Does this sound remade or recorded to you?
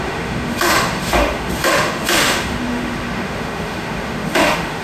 remade